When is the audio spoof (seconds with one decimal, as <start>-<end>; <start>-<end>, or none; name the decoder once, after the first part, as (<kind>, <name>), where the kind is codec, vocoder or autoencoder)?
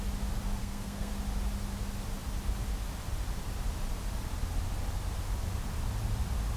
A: 0.6-1.1 (codec, SNAC)